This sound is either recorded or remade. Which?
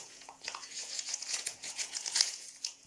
remade